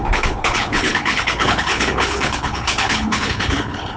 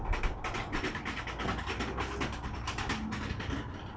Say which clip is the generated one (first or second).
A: first